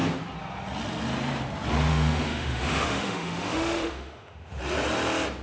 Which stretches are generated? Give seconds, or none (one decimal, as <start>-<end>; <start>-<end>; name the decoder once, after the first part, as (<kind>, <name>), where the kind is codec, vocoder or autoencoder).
1.9-4.6 (autoencoder, DAC-VAE)